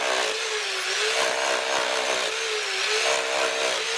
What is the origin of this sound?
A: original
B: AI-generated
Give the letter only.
A